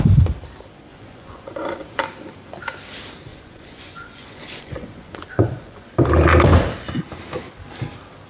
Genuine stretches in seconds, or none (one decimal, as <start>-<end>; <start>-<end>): 0.0-0.9; 2.0-3.3; 5.9-8.3